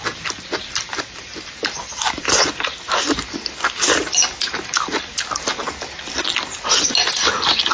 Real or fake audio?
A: real